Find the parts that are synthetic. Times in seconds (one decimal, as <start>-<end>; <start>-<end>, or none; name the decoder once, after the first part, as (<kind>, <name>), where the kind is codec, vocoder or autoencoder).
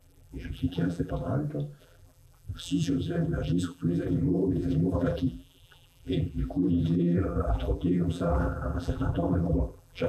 0.0-1.3 (vocoder, BigVGAN v2); 1.8-10.1